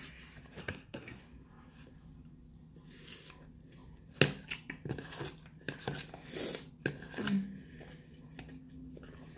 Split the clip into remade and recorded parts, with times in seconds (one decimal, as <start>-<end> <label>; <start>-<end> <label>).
0.0-0.6 recorded; 0.6-1.2 remade; 1.2-9.4 recorded